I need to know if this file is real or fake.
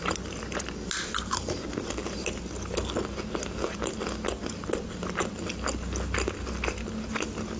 real